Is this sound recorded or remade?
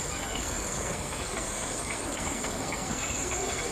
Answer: remade